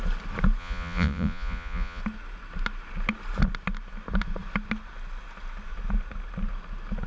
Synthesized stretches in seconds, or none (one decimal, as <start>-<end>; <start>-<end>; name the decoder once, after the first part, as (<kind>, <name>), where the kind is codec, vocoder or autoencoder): 0.6-2.0 (vocoder, Vocos)